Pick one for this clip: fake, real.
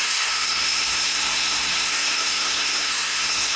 fake